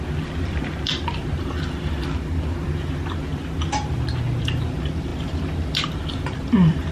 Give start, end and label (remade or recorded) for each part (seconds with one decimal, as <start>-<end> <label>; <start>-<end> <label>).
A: 0.0-3.3 remade; 3.3-4.4 recorded; 4.4-6.9 remade